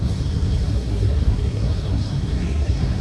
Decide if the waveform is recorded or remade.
remade